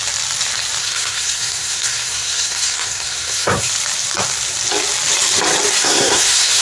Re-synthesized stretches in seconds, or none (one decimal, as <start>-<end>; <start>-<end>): 0.8-3.7; 5.8-6.6